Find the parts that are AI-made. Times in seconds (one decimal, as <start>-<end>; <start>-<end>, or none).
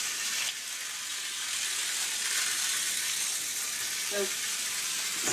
none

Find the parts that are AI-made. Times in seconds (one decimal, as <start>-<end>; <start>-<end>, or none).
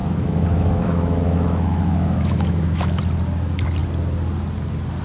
0.0-3.0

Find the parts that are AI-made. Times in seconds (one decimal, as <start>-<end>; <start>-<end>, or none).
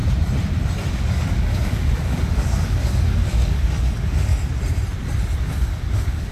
0.9-4.3; 5.4-6.3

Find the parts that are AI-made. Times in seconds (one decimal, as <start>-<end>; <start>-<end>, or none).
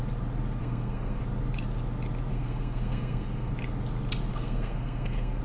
0.6-1.2; 2.3-3.5; 4.3-5.4